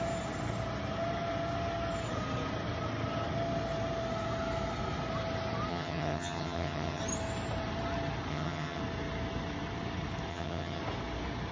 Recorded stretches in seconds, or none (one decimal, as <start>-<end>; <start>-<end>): 0.0-5.7; 7.0-8.3; 8.8-10.3; 10.8-11.5